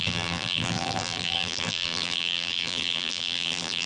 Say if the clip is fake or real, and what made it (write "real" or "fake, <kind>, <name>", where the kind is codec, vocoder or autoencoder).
fake, vocoder, BigVGAN v2